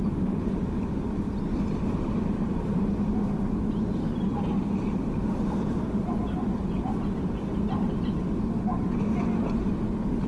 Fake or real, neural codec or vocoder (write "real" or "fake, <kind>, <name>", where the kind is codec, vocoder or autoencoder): real